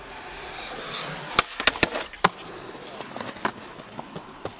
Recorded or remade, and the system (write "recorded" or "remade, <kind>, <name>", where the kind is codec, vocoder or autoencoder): recorded